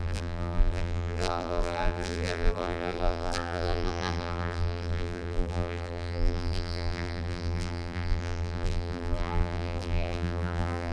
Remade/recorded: remade